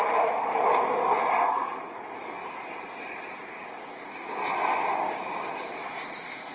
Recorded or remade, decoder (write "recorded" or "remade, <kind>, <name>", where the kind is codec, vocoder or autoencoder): recorded